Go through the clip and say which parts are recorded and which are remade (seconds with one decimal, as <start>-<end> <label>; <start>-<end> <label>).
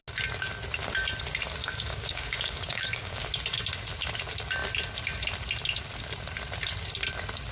0.0-1.6 recorded; 1.6-3.3 remade; 3.3-7.5 recorded